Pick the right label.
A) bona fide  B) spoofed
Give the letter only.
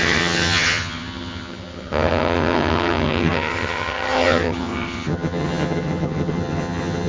B